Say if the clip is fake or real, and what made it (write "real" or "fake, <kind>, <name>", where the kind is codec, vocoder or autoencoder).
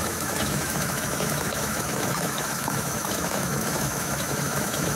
fake, autoencoder, DAC-VAE